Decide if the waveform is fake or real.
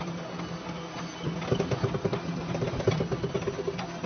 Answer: real